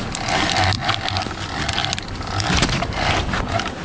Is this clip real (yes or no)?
yes